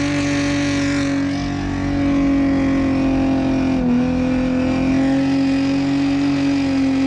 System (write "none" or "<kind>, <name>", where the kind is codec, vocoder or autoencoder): none